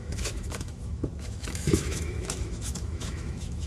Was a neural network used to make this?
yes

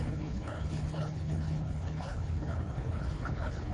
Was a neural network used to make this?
yes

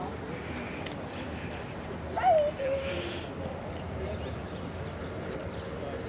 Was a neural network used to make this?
no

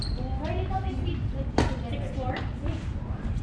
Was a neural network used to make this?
no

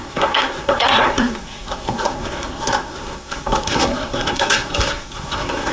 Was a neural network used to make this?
yes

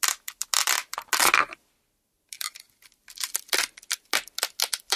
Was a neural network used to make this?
no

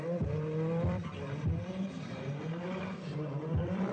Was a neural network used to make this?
yes